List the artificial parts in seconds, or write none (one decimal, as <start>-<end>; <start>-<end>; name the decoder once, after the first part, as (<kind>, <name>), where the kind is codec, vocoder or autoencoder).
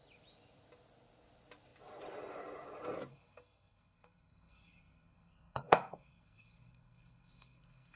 3.1-8.0 (codec, SNAC)